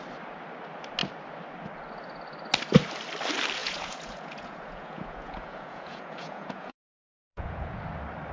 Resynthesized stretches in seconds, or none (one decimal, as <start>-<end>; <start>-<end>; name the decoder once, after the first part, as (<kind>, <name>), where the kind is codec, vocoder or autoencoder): 3.6-7.8 (vocoder, Vocos)